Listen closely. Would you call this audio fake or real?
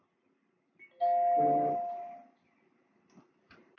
real